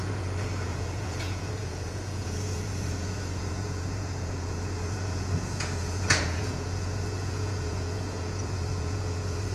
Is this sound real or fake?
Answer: fake